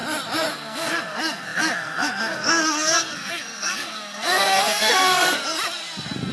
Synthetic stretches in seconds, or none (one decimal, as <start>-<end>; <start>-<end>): 0.5-5.4